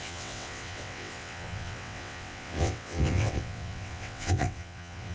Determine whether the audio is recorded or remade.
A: remade